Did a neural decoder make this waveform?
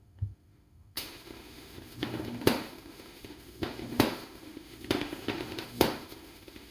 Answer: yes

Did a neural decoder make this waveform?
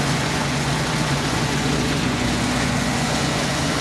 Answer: yes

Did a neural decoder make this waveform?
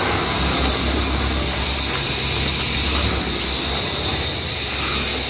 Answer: no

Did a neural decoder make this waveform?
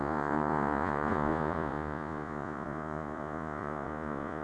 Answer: yes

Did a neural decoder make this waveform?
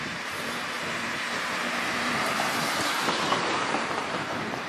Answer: yes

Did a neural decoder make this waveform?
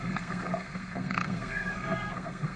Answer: yes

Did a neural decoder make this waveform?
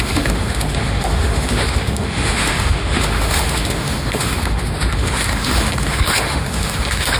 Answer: yes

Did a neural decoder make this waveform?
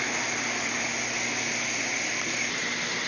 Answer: no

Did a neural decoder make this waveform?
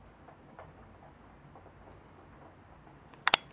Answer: no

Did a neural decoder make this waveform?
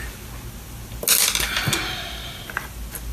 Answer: no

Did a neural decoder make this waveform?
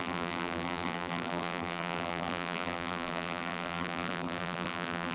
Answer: yes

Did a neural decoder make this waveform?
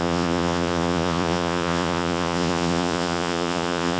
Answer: yes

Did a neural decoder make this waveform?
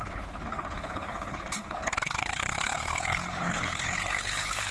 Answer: yes